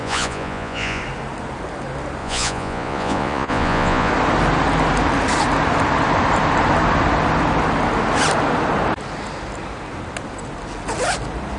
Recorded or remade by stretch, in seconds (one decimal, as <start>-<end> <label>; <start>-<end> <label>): 0.0-1.0 remade; 1.0-2.2 recorded; 2.2-4.1 remade; 4.1-11.6 recorded